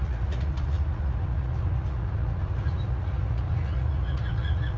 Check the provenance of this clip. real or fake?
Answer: fake